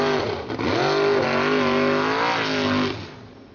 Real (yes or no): yes